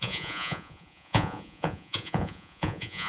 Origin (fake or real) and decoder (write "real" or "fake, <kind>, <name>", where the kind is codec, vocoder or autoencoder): fake, vocoder, Vocos